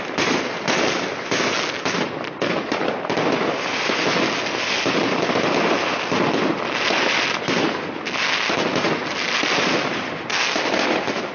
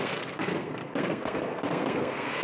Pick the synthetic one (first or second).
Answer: second